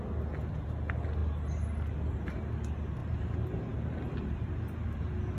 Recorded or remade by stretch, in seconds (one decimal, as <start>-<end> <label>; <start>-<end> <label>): 0.0-3.0 recorded; 3.0-5.0 remade; 5.0-5.4 recorded